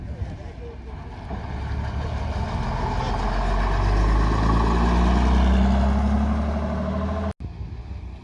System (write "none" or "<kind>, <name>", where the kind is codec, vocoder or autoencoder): none